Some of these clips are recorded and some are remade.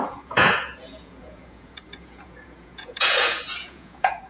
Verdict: remade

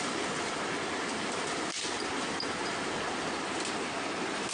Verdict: recorded